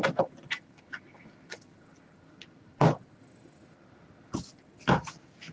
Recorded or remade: recorded